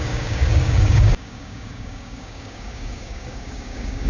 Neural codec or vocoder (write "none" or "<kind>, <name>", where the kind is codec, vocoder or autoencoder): codec, DAC